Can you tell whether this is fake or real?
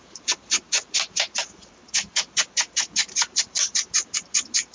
fake